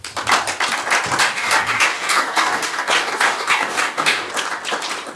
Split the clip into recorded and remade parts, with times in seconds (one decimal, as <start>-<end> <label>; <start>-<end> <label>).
0.0-1.2 recorded; 1.2-4.3 remade; 4.3-5.2 recorded